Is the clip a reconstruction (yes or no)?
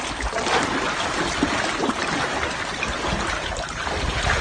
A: no